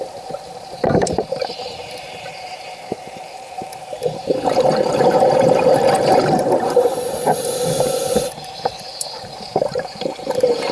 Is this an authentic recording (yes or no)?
no